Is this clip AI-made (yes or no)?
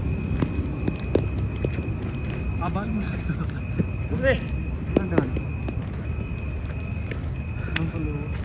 no